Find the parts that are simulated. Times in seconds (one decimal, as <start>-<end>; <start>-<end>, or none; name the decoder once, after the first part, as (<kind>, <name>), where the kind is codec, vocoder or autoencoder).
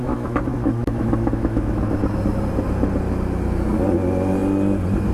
0.0-1.8 (autoencoder, DAC-VAE)